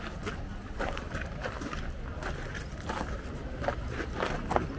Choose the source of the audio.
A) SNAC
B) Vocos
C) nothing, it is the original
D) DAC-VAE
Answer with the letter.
C